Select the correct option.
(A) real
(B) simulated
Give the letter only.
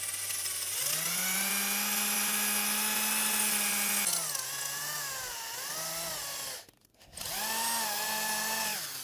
A